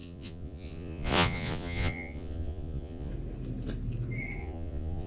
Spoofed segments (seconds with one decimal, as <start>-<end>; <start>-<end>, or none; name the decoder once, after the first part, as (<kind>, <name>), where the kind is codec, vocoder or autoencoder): 0.0-3.1 (vocoder, Vocos); 4.4-5.1